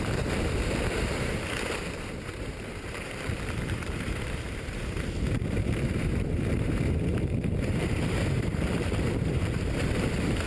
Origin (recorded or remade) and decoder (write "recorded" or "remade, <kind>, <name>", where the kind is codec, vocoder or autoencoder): remade, vocoder, BigVGAN v2